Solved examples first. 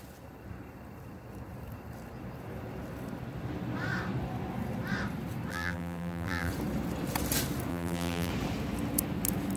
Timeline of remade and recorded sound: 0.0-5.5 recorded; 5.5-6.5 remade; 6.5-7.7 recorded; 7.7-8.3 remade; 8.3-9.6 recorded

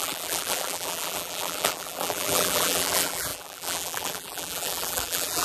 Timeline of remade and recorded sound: 0.0-5.4 remade